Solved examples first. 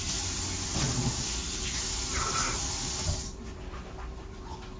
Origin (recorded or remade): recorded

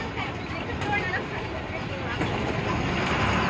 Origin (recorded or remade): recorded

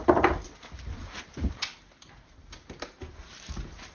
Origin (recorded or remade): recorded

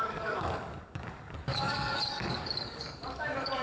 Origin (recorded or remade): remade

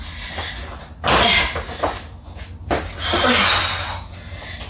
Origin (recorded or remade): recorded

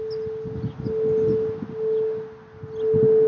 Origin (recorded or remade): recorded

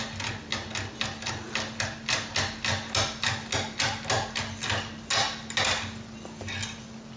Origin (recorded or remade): recorded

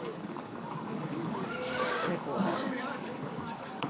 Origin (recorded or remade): remade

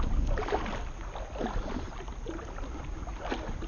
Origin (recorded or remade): recorded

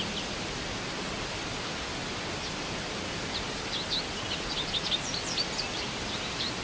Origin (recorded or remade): recorded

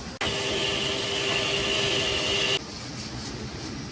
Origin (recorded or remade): recorded